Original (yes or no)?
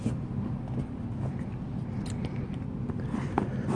yes